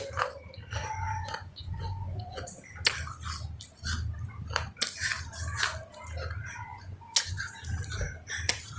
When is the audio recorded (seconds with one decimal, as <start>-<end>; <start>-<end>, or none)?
0.0-0.8; 2.4-6.7; 7.5-8.8